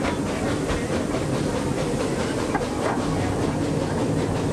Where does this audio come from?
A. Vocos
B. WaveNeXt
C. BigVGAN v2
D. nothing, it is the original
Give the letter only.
D